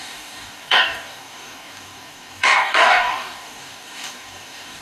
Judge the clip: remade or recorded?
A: remade